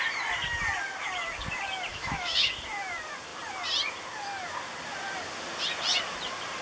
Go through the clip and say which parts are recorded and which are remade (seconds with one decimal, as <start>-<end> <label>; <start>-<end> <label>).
0.0-1.9 recorded; 1.9-2.5 remade; 2.5-6.6 recorded